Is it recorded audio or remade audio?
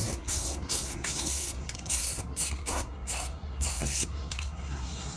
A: remade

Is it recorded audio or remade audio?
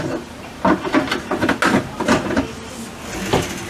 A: recorded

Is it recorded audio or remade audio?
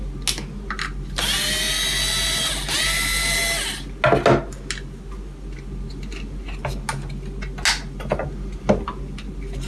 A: recorded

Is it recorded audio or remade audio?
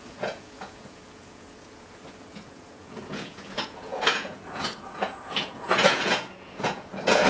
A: remade